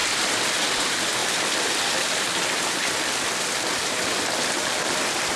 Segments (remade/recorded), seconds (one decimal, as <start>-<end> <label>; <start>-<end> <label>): 0.0-5.4 recorded